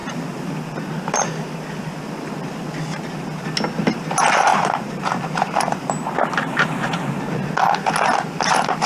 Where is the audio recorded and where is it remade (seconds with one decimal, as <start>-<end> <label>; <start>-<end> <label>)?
0.0-0.5 remade; 0.5-4.5 recorded; 4.5-7.2 remade; 7.2-8.9 recorded